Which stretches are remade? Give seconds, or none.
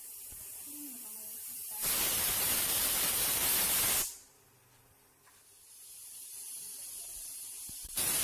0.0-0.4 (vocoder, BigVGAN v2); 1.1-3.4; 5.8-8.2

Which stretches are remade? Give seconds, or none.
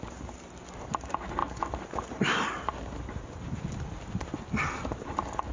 none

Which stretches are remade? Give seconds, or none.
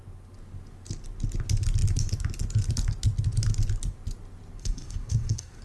4.6-5.6 (codec, SNAC)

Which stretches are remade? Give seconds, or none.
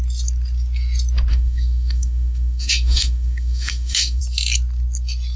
1.3-4.2 (autoencoder, DAC-VAE)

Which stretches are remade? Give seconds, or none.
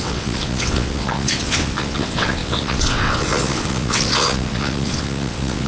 0.0-5.7 (vocoder, WaveNeXt)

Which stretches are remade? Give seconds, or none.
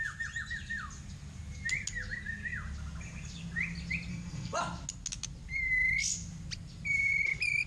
4.1-4.6 (codec, SNAC)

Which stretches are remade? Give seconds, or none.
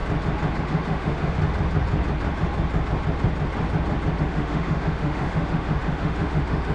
0.6-1.4 (autoencoder, DAC-VAE); 4.2-6.7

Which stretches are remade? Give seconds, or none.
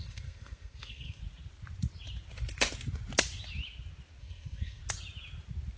0.0-1.2 (codec, SNAC); 4.2-4.8